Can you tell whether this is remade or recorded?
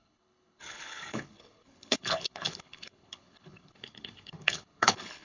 remade